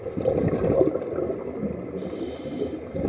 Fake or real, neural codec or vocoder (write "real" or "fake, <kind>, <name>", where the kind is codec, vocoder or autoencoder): real